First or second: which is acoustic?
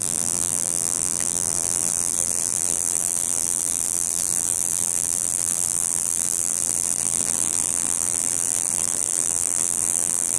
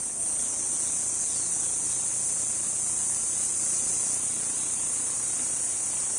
second